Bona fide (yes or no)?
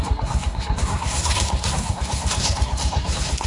no